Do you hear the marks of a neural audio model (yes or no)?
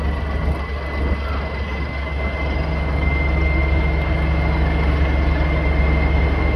no